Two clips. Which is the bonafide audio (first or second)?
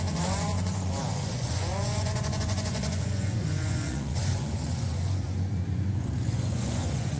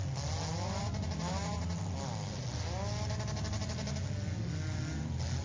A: second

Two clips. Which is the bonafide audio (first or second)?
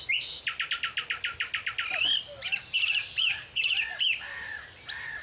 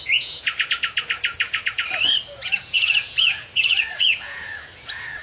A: first